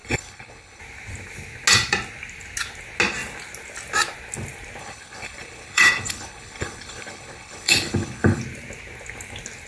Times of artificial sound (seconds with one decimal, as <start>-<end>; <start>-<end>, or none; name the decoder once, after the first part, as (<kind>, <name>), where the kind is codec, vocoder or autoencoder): 0.0-0.8 (codec, HILCodec); 4.8-8.4